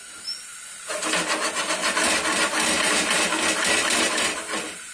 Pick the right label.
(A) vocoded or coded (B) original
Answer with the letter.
B